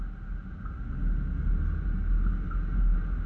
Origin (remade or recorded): recorded